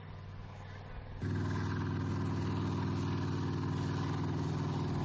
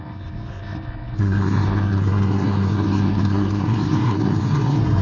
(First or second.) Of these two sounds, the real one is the first